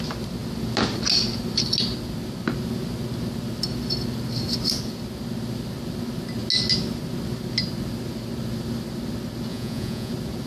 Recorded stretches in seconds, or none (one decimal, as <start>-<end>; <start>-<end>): 0.0-9.5; 10.1-10.5